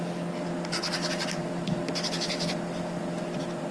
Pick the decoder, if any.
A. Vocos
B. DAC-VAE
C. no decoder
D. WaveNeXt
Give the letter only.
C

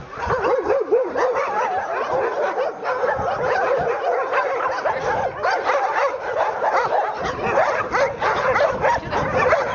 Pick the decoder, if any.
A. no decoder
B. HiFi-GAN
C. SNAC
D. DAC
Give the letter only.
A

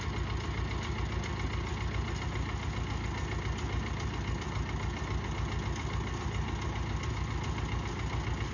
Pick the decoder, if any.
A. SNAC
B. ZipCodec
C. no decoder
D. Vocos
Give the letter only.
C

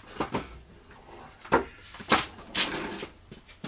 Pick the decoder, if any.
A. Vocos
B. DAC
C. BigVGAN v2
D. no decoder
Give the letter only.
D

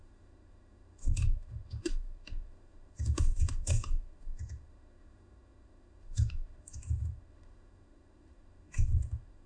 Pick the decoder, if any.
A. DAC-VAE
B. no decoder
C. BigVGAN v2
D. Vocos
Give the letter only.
A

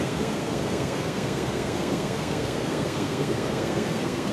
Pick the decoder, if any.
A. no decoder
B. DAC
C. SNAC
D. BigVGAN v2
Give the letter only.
C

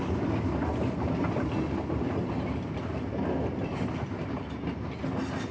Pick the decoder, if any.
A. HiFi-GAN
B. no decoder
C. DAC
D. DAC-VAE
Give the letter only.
B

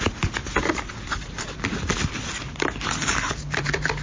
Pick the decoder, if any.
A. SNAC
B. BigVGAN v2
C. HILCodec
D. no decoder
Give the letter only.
B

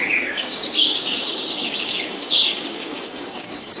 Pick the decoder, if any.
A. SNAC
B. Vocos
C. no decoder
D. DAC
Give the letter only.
D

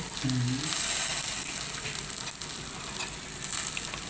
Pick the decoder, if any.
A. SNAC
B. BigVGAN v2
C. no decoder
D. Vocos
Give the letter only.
C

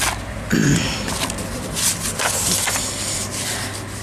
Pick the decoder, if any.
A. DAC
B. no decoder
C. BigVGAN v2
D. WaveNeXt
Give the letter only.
C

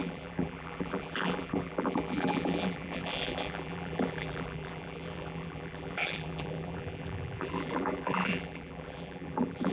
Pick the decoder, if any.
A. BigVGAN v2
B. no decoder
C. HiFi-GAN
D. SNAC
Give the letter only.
A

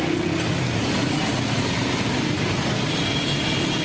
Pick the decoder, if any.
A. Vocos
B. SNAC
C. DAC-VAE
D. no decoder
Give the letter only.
D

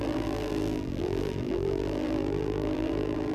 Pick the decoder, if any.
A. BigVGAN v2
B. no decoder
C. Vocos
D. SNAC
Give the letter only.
A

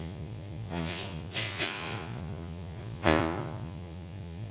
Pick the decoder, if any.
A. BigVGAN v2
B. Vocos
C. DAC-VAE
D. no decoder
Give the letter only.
B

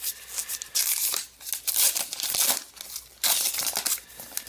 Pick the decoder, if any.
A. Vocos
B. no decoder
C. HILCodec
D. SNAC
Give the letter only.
B